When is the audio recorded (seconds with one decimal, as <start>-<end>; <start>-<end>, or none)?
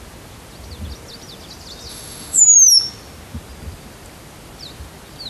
0.0-1.9; 2.4-5.3